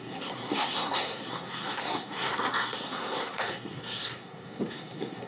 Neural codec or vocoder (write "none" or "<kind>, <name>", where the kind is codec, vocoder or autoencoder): codec, SNAC